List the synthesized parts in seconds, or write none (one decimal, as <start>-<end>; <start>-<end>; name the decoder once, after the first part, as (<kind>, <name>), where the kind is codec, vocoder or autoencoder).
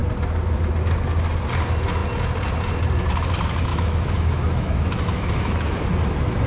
3.7-5.9 (autoencoder, DAC-VAE)